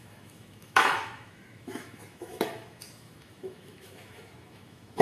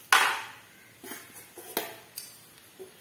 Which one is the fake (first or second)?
first